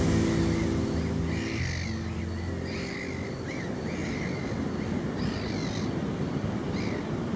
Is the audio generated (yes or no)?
no